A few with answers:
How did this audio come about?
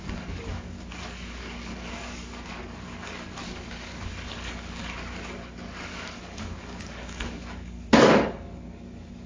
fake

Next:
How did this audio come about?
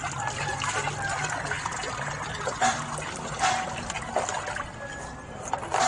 real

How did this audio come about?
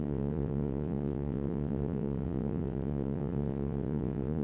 fake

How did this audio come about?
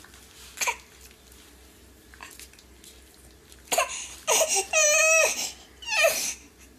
real